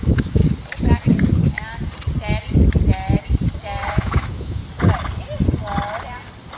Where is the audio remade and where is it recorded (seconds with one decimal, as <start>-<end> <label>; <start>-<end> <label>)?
0.0-0.4 remade; 0.4-3.9 recorded; 3.9-4.6 remade; 4.6-6.6 recorded